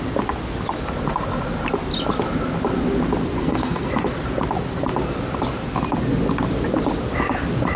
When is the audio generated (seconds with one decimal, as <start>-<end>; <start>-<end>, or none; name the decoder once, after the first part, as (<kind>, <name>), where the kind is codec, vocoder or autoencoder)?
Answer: 3.4-3.9 (codec, SNAC)